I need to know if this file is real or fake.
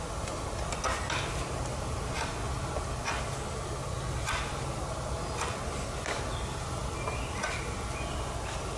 real